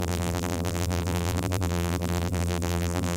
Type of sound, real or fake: fake